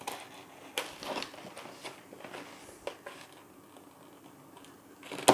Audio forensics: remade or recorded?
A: recorded